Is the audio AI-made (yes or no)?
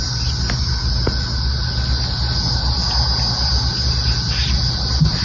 no